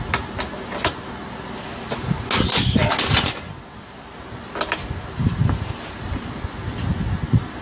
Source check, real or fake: real